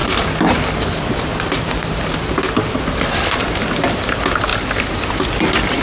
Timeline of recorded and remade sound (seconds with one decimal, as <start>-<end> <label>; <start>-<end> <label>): 0.0-5.8 recorded